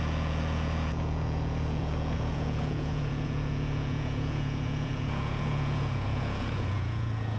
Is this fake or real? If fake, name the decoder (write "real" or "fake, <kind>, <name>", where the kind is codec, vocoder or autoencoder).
fake, vocoder, Vocos